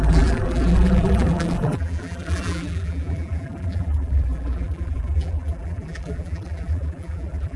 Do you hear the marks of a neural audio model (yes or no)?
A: yes